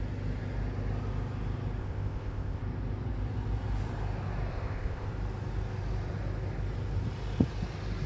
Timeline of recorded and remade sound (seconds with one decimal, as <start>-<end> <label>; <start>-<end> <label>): 0.0-1.8 recorded; 1.8-2.6 remade; 2.6-4.5 recorded; 4.5-5.1 remade; 5.1-8.1 recorded